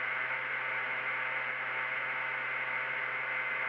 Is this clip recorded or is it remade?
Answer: recorded